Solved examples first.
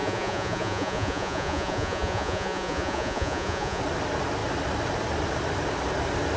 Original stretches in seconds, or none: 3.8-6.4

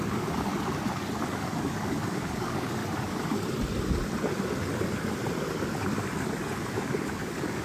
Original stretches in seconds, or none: 0.5-1.3; 2.8-6.7

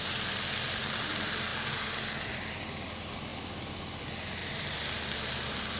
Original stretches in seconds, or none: 0.0-4.4; 5.0-5.8